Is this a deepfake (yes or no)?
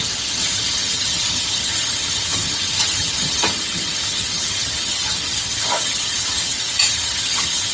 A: yes